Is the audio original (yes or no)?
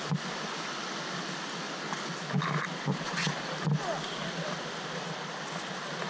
yes